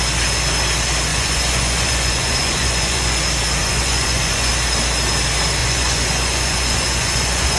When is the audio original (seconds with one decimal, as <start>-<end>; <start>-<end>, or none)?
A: 0.0-1.1; 3.2-3.6; 4.5-5.6